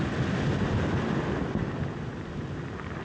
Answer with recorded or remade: recorded